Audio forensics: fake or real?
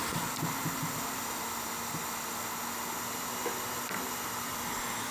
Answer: real